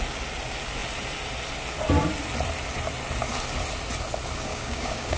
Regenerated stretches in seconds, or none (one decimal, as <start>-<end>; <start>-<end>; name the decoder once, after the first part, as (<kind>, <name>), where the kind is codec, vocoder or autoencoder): 4.5-5.2 (codec, DAC)